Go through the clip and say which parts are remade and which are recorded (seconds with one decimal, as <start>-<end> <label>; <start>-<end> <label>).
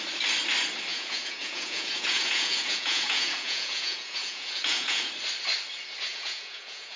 0.0-0.9 recorded; 0.9-5.1 remade; 5.1-6.1 recorded; 6.1-7.0 remade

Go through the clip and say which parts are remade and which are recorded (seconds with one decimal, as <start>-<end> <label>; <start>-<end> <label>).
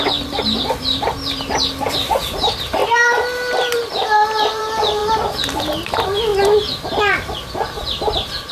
0.0-5.0 remade; 5.0-5.6 recorded; 5.6-6.3 remade; 6.3-8.5 recorded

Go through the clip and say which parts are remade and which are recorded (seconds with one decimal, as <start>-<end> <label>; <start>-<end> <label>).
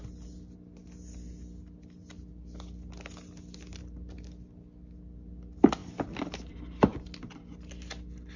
0.0-8.4 recorded